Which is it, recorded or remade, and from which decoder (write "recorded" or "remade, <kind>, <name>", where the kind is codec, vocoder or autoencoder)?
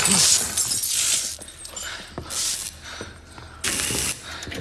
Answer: recorded